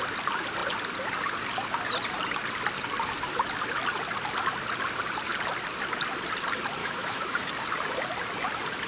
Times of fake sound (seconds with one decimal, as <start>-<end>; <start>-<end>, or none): 6.8-7.5